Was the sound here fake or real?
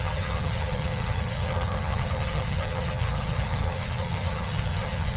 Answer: fake